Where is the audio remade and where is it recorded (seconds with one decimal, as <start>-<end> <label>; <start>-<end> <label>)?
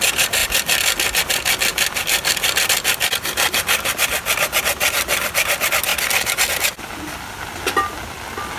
0.0-8.6 recorded